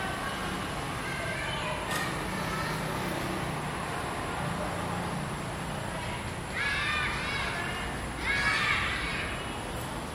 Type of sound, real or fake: real